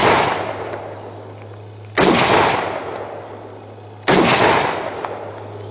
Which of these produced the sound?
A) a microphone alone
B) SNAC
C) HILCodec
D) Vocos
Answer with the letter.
A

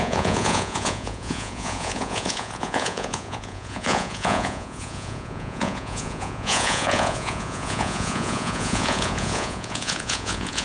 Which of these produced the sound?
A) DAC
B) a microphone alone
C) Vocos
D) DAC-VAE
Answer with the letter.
C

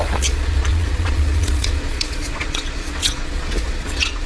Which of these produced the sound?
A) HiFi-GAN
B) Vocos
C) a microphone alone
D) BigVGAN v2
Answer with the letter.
B